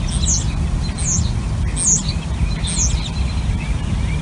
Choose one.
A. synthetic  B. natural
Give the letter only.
B